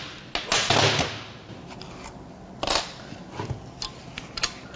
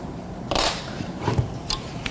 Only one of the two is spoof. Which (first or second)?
second